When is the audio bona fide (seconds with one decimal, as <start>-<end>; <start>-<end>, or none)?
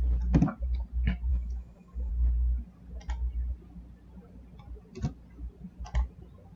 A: 0.0-1.3; 2.1-6.6